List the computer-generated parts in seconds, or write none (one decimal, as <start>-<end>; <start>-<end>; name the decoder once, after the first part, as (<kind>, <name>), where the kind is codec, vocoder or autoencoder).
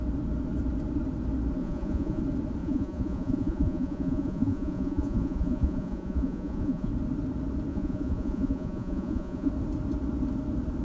1.6-2.2 (vocoder, Vocos); 2.6-6.9; 7.7-9.5